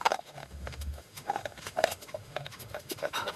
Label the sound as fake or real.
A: fake